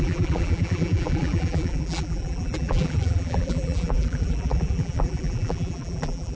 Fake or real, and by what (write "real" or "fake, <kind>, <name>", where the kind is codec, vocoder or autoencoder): fake, vocoder, BigVGAN v2